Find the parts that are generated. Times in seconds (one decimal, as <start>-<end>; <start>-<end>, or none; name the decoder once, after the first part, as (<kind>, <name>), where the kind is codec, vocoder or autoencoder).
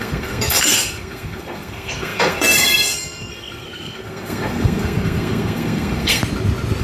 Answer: 0.0-6.2 (codec, SNAC)